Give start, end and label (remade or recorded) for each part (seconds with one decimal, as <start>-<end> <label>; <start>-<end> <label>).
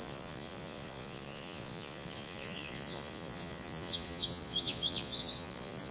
0.0-5.9 remade